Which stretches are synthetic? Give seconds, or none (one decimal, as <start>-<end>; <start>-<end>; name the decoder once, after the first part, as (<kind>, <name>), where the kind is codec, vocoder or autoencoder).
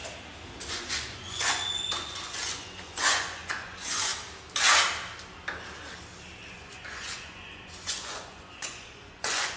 0.7-4.1 (vocoder, Vocos); 6.5-9.6